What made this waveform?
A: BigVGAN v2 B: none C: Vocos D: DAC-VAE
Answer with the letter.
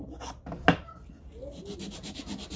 B